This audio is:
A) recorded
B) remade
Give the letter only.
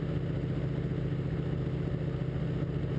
A